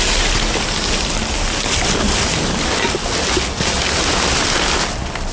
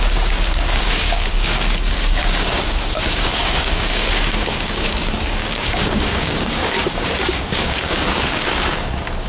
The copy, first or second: second